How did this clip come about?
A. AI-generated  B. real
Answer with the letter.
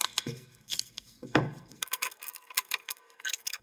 A